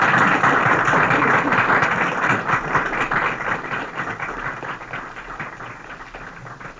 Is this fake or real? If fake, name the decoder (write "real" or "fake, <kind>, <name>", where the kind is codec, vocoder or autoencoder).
real